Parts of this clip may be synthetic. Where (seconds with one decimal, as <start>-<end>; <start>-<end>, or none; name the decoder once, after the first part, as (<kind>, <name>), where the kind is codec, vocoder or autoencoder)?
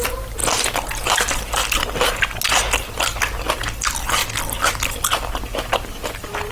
none